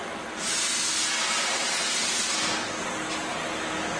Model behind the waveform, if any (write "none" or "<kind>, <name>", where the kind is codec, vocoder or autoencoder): none